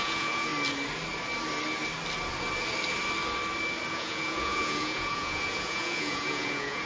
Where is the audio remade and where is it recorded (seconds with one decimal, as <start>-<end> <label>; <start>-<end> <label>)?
0.0-0.5 remade; 0.5-3.9 recorded; 3.9-6.9 remade